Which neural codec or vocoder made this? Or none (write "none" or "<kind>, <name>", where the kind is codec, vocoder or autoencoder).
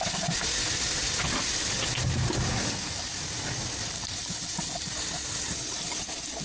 none